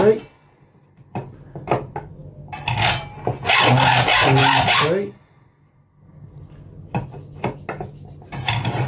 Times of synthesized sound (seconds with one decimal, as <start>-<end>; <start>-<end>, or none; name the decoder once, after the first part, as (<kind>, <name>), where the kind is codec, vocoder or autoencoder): none